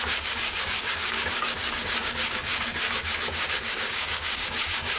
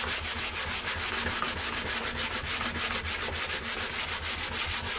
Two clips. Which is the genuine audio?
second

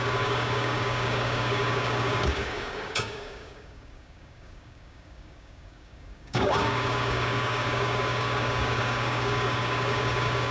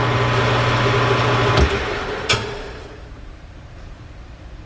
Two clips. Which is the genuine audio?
second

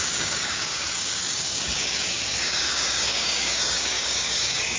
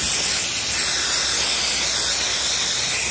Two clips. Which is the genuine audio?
second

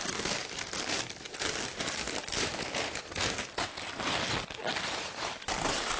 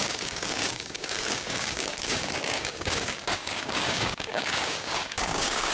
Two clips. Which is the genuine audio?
first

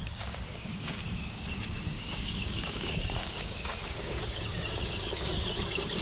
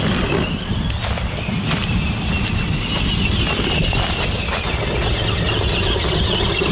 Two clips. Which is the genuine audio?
second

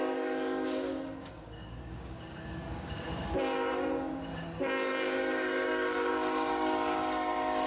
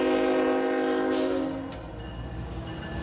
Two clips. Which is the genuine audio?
second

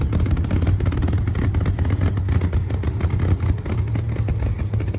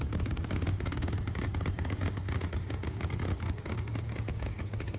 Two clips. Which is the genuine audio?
first